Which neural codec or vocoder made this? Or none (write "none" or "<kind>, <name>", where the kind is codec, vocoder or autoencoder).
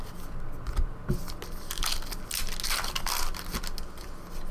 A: none